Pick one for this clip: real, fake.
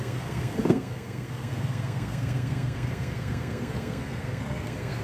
fake